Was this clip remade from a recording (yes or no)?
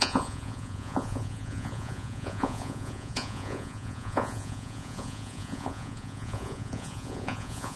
yes